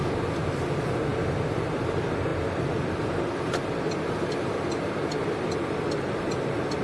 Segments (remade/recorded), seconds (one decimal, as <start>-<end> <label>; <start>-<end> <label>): 0.0-6.8 recorded

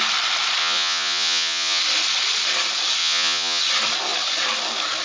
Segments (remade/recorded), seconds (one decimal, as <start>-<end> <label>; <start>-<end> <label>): 0.0-0.6 recorded; 0.6-1.8 remade; 1.8-3.0 recorded; 3.0-3.6 remade; 3.6-5.0 recorded